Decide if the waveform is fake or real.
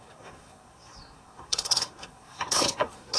fake